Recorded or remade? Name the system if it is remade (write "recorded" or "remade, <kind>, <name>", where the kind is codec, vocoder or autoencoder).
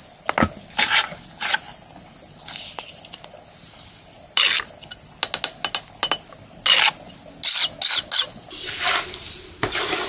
recorded